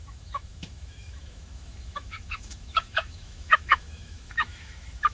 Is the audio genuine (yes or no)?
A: no